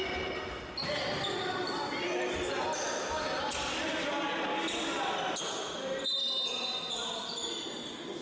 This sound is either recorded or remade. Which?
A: recorded